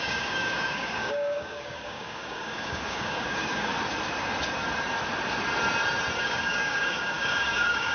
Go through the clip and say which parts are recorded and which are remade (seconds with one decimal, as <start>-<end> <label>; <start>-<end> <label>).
0.0-3.7 remade; 3.7-6.2 recorded; 6.2-7.9 remade